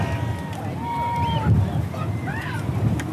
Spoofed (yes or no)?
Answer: no